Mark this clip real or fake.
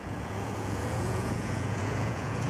fake